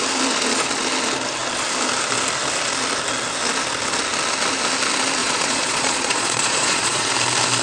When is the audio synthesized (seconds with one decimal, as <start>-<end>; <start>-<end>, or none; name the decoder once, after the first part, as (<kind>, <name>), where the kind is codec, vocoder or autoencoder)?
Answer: 5.2-7.1 (vocoder, Vocos)